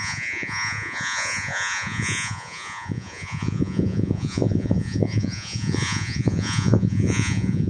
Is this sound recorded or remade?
remade